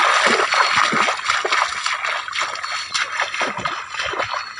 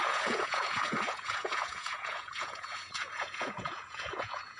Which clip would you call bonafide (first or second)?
first